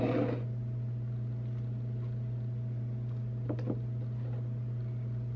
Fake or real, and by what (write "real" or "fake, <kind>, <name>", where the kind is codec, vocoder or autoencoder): real